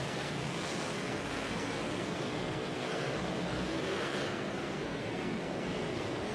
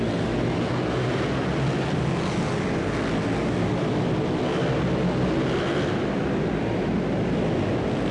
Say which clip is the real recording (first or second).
second